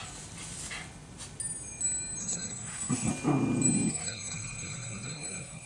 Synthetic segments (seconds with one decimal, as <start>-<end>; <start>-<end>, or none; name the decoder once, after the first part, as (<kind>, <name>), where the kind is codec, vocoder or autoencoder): 2.2-3.1 (codec, SNAC); 3.9-5.7